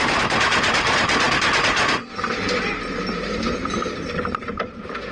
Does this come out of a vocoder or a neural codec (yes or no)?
no